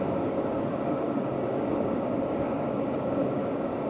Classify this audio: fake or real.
fake